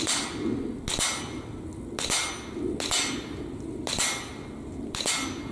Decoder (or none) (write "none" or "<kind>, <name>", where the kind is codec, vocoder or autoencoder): none